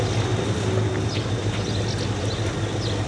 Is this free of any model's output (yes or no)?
yes